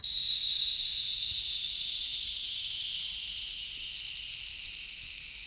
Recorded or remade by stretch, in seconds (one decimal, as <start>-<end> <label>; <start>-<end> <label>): 0.0-3.9 remade; 3.9-5.5 recorded